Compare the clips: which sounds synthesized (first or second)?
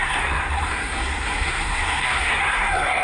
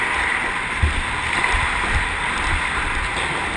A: first